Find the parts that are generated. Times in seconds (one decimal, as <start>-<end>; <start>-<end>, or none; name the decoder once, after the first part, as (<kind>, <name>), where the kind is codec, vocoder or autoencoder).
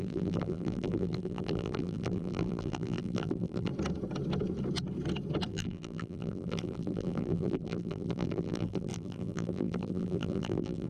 0.0-3.7 (vocoder, BigVGAN v2); 5.5-10.9